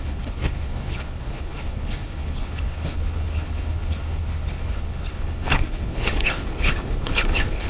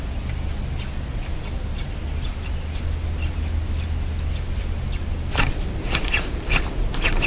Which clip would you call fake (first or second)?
first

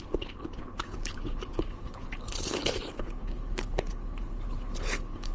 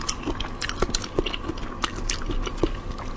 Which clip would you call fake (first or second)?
first